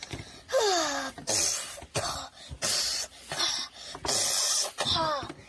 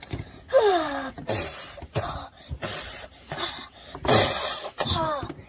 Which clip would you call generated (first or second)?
second